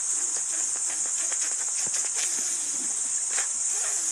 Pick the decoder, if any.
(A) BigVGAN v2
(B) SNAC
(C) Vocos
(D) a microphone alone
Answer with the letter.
D